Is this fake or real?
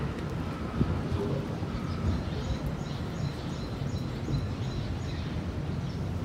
real